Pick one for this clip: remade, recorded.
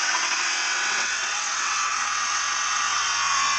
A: remade